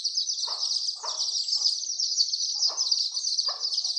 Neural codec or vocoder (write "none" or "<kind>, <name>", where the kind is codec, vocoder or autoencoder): none